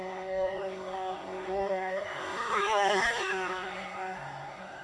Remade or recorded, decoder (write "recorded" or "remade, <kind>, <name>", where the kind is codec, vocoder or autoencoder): remade, codec, SNAC